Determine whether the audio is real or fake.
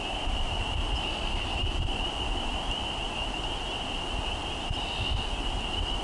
fake